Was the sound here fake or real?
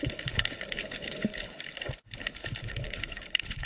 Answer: fake